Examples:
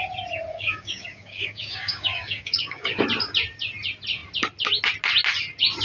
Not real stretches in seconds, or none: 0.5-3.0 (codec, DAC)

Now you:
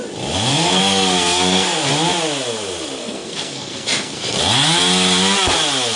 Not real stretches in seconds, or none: 0.5-1.9 (codec, SNAC); 3.0-4.4

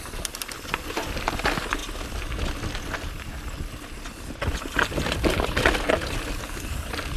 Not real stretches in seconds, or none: none

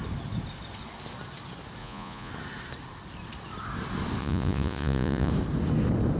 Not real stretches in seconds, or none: 1.8-2.3 (vocoder, Vocos); 4.2-5.3

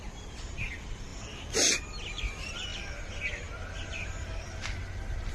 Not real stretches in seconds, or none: none